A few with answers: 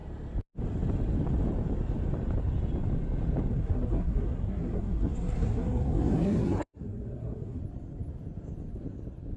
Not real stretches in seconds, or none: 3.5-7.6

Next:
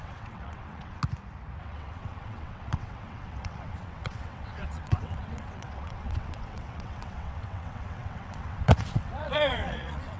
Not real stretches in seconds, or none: 0.0-1.0; 1.6-10.2